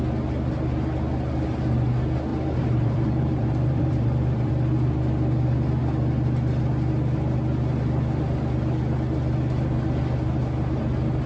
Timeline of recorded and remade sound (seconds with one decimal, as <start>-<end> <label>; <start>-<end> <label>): 0.0-2.3 recorded; 2.3-4.5 remade; 4.5-11.3 recorded